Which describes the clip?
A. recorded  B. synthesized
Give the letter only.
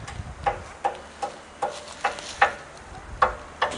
A